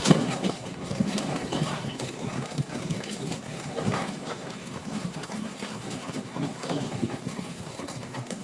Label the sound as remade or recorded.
remade